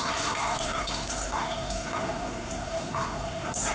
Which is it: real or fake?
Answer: fake